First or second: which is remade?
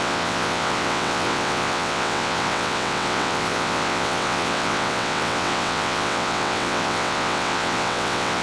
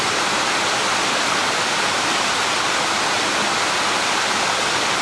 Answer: first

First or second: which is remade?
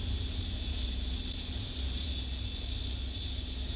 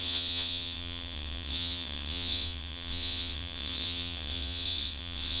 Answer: second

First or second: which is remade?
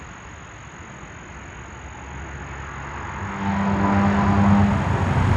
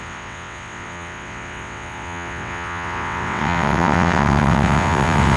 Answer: second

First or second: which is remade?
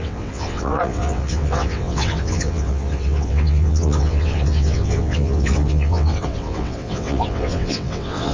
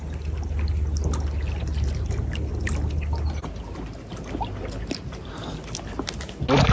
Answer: first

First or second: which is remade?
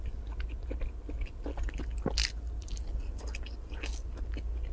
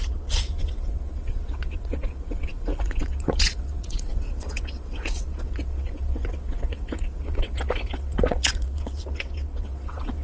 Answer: second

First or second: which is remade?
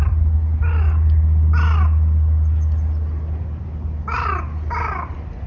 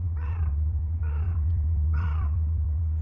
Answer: second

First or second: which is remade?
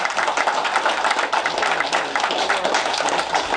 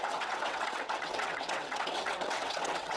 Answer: second